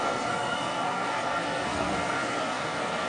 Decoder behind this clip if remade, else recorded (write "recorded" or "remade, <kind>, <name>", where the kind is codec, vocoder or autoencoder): remade, codec, SNAC